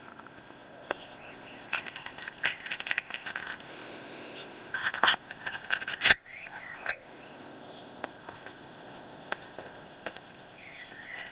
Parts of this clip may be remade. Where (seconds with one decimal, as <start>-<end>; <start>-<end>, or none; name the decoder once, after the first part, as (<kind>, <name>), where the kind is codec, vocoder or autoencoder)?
0.0-11.3 (codec, ZipCodec)